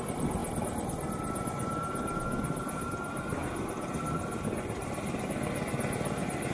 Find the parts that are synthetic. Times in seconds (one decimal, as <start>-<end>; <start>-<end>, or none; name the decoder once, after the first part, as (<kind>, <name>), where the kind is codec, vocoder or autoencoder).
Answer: 3.4-5.2 (vocoder, BigVGAN v2)

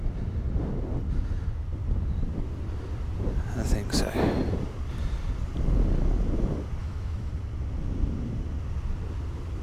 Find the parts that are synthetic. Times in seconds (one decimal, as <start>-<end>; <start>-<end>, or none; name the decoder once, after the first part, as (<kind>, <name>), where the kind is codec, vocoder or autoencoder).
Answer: 6.8-7.3 (autoencoder, DAC-VAE)

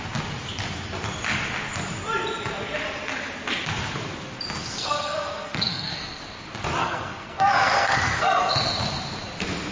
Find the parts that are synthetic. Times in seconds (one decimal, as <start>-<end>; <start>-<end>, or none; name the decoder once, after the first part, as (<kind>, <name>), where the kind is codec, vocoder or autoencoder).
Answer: 4.6-6.2 (codec, SNAC); 6.8-8.5

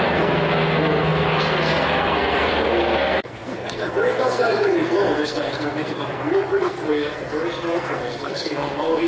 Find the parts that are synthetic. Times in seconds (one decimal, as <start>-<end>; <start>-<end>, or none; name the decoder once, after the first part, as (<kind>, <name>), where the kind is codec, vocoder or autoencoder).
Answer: 0.0-9.1 (codec, SNAC)

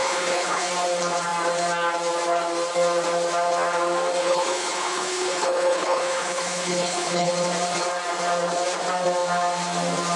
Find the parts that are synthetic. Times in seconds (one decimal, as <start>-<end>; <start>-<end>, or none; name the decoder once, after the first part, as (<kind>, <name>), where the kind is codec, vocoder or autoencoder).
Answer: 0.0-0.7 (codec, HILCodec); 4.2-7.3

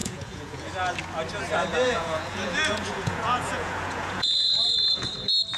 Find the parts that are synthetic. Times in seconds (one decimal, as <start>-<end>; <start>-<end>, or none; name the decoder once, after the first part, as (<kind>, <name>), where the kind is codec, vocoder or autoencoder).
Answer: 0.0-0.7 (vocoder, Vocos); 1.7-5.1

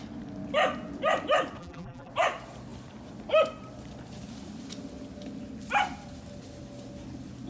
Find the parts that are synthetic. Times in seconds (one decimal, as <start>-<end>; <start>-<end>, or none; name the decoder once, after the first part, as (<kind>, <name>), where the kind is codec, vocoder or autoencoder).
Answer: 1.6-2.1 (vocoder, BigVGAN v2)